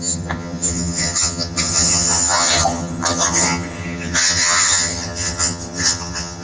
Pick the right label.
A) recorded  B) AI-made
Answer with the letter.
B